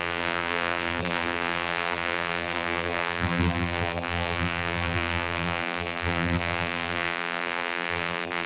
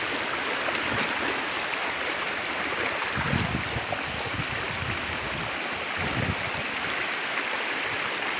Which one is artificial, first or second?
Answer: first